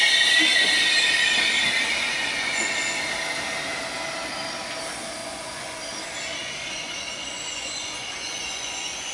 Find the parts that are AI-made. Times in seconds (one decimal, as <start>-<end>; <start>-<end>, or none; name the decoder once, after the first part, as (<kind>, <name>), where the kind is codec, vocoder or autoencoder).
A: 2.0-2.7 (vocoder, Vocos); 5.2-5.8; 6.4-9.1